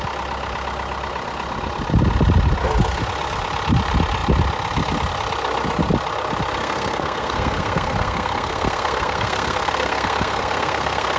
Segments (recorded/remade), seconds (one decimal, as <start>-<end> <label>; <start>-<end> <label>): 0.0-6.6 recorded; 6.6-11.2 remade